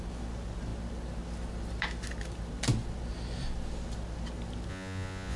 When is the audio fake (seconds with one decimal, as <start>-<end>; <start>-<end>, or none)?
4.7-5.4